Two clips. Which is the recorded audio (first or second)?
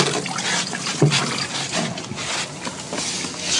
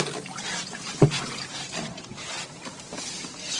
first